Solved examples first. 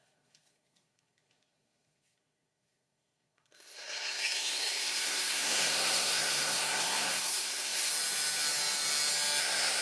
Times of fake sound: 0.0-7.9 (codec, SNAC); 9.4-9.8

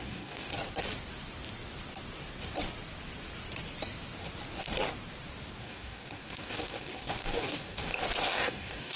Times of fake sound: 0.0-0.5 (codec, DAC); 5.6-7.9; 8.4-9.0